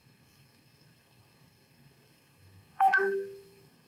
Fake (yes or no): yes